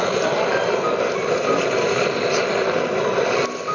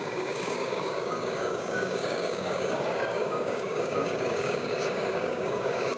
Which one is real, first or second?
first